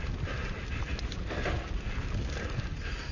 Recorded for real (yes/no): yes